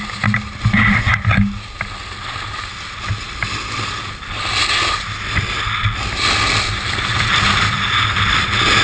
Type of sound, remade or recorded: recorded